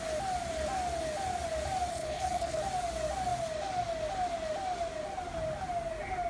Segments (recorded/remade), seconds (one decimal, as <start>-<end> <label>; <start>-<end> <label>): 0.0-1.9 recorded; 1.9-2.6 remade; 2.6-6.3 recorded

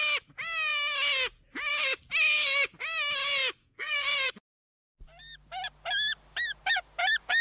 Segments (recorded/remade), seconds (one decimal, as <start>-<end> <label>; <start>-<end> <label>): 0.0-3.6 recorded; 3.6-4.3 remade; 4.3-7.4 recorded